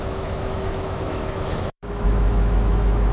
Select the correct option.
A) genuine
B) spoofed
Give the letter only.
B